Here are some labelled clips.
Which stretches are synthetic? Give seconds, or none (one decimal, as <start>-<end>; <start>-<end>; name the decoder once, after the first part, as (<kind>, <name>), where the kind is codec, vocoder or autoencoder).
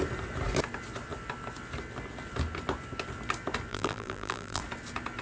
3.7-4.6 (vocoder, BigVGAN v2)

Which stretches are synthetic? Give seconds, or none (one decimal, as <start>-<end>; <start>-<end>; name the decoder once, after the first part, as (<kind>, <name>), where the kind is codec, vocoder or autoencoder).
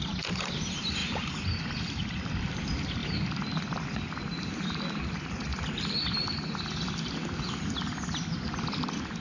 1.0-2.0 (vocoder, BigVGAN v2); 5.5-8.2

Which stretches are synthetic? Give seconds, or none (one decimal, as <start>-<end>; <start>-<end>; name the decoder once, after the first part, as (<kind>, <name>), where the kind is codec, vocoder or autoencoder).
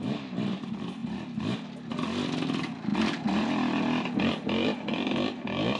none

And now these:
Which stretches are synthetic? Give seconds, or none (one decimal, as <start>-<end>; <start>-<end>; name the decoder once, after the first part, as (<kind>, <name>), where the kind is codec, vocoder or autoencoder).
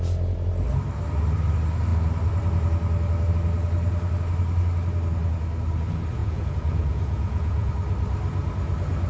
6.2-7.7 (vocoder, Vocos)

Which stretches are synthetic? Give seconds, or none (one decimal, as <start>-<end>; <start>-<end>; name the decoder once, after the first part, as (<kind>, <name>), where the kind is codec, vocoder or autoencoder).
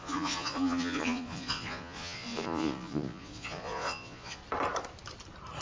0.0-4.4 (vocoder, Vocos)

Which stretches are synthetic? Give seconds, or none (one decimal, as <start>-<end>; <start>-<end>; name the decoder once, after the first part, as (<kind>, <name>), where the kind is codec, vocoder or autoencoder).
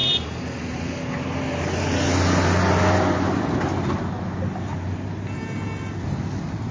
none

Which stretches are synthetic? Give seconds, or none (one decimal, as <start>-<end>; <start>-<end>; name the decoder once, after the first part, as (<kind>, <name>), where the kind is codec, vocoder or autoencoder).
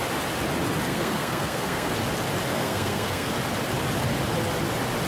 0.9-1.9 (codec, SNAC); 2.5-3.3